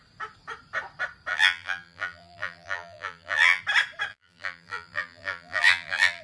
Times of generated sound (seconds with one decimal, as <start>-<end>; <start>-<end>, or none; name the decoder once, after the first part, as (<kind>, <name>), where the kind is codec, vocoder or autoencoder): 1.3-3.6 (vocoder, BigVGAN v2); 4.1-6.2